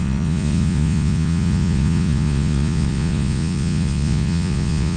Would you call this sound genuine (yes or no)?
no